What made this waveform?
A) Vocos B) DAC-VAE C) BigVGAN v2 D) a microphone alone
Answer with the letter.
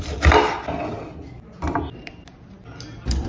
D